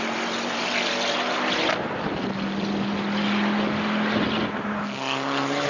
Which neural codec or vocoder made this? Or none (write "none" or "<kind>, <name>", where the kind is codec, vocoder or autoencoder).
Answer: none